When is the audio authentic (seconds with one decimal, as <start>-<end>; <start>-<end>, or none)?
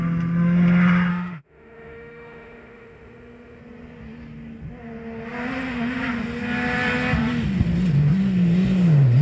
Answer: 0.0-1.1; 3.6-9.2